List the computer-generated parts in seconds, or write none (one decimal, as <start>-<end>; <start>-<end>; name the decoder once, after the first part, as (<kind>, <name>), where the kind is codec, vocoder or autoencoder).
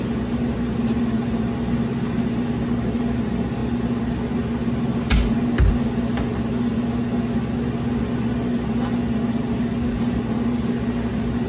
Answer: none